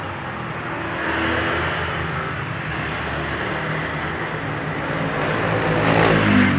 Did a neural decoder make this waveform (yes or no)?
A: no